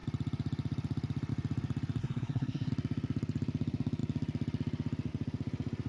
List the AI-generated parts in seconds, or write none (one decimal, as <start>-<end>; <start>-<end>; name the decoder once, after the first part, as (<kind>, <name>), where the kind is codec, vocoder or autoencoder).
2.0-2.7 (codec, SNAC)

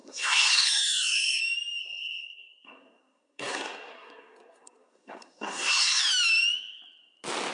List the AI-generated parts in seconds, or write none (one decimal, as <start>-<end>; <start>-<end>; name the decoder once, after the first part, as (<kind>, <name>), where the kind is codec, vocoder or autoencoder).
0.0-1.4 (codec, SNAC); 1.8-6.0